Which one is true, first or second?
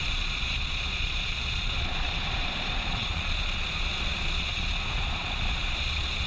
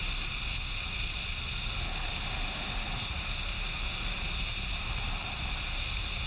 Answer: second